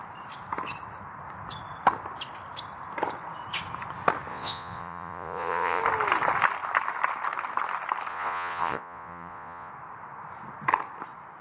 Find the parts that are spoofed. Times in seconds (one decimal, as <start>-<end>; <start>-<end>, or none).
4.3-5.8; 8.1-9.7